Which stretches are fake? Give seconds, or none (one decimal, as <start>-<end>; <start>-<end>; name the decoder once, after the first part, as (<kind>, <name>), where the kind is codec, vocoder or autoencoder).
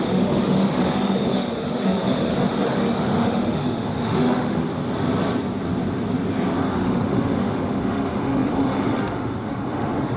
0.0-4.7 (autoencoder, DAC-VAE); 6.6-10.2